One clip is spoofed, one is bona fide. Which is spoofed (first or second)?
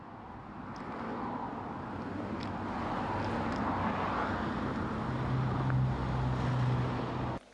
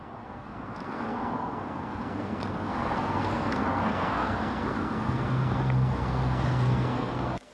second